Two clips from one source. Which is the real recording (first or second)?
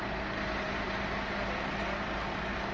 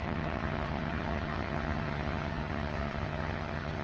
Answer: first